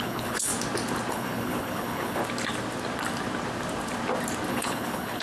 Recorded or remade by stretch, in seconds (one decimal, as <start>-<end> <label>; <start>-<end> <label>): 0.0-0.5 remade; 0.5-1.1 recorded; 1.1-2.2 remade; 2.2-4.5 recorded; 4.5-5.2 remade

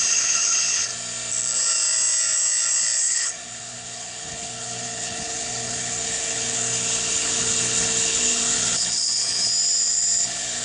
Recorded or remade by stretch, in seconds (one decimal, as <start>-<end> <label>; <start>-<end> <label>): 0.0-0.9 remade; 0.9-3.0 recorded; 3.0-9.5 remade; 9.5-10.2 recorded; 10.2-10.6 remade

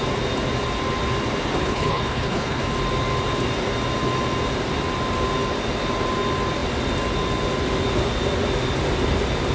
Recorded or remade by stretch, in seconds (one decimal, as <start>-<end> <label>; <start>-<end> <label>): 0.0-1.6 recorded; 1.6-2.6 remade; 2.6-9.5 recorded

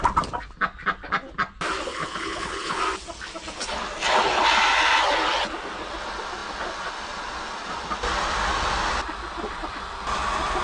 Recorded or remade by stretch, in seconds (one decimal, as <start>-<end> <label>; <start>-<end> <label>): 0.0-1.9 recorded; 1.9-2.8 remade; 2.8-10.6 recorded